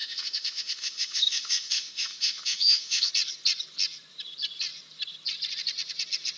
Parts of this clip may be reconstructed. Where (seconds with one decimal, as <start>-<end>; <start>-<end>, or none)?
0.0-3.1